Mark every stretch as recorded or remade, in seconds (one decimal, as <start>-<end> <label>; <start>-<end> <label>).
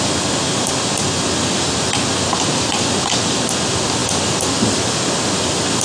0.0-4.0 recorded; 4.0-5.8 remade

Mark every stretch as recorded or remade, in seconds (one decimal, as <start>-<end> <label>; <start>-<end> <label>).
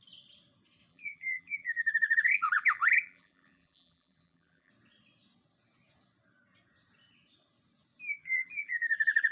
0.0-0.9 recorded; 0.9-4.7 remade; 4.7-8.2 recorded; 8.2-9.3 remade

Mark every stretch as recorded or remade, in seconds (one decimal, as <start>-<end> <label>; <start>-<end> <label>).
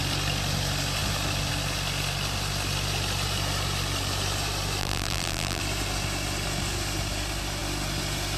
0.0-4.8 recorded; 4.8-5.6 remade; 5.6-8.4 recorded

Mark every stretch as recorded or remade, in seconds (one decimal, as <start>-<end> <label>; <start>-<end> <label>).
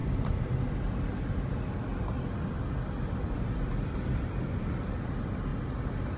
0.0-6.2 recorded